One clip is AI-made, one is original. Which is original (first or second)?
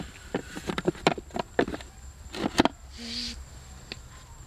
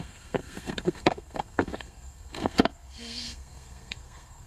first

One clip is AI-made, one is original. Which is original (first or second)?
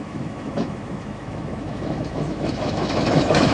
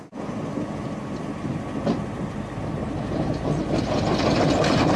second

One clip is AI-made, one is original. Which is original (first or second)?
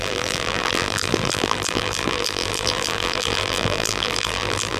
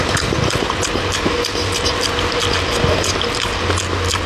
second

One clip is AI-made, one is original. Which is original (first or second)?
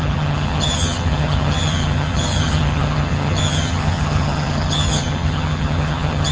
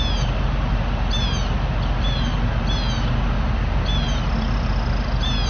second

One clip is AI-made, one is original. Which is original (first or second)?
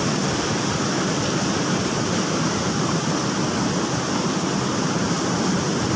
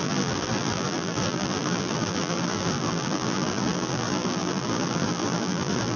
first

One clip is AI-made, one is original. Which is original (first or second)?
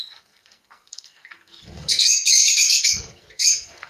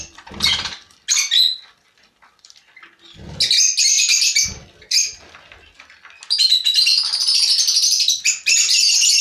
second